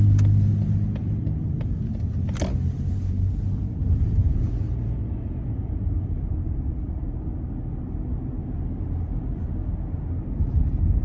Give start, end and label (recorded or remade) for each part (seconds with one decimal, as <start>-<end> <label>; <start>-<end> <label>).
0.0-4.2 recorded; 4.2-6.9 remade; 6.9-9.6 recorded; 9.6-10.1 remade; 10.1-11.0 recorded